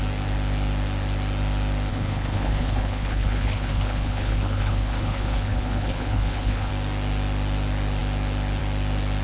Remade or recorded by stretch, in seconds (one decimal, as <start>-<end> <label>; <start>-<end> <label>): 0.0-1.9 recorded; 1.9-6.7 remade; 6.7-9.2 recorded